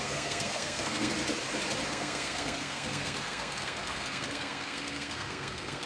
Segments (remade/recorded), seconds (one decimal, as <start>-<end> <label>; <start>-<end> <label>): 0.0-1.1 remade; 1.1-1.9 recorded; 1.9-5.9 remade